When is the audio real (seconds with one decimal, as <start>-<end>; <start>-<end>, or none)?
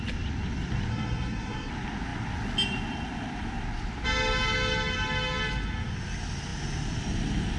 0.0-0.9; 1.7-7.6